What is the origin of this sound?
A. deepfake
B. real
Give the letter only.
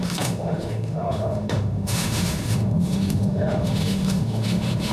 A